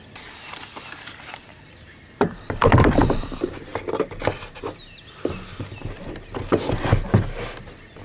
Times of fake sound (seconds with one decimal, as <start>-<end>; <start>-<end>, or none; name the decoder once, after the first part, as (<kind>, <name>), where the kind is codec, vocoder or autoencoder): 1.5-3.2 (vocoder, BigVGAN v2)